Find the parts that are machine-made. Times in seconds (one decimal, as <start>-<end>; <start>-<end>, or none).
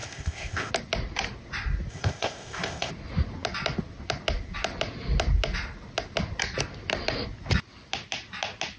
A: 0.0-0.7; 1.9-2.9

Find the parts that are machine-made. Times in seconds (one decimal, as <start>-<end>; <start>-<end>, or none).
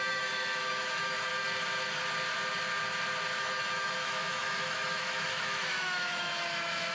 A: 0.0-1.3; 3.4-6.9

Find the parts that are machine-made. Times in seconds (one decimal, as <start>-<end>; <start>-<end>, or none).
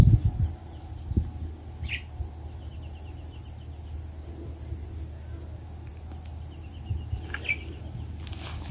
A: none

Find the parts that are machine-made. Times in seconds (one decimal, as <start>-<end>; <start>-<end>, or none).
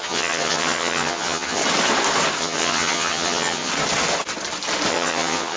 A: 0.0-1.6; 2.4-3.7; 4.9-5.6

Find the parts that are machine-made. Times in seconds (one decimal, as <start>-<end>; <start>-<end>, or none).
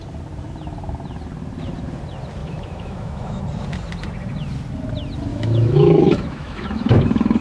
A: 2.4-3.4; 5.3-7.4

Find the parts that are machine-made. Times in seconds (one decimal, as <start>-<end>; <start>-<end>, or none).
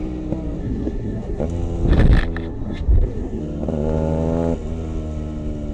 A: 0.6-1.4; 2.5-3.4